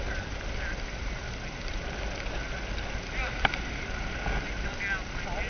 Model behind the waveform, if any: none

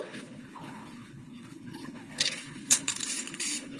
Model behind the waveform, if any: codec, HILCodec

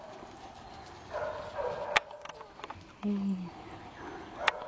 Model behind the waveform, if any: none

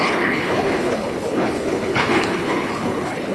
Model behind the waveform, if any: codec, HILCodec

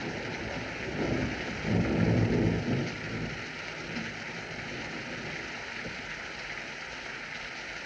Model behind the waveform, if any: none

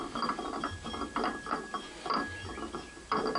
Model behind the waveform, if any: none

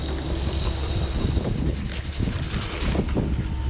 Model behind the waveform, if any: none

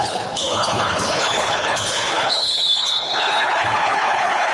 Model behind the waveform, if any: codec, HILCodec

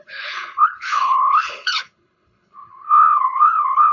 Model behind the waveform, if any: codec, HILCodec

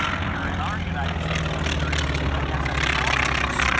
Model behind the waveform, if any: none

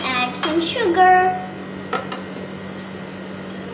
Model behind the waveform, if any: none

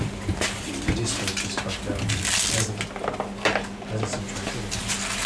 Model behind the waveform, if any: none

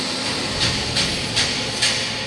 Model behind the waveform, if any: none